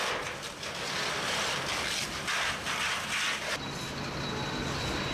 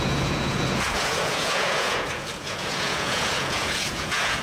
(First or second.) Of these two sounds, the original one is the first